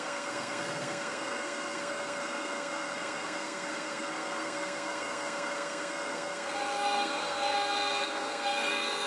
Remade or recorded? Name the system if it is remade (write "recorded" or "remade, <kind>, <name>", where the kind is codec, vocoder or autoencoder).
remade, codec, SNAC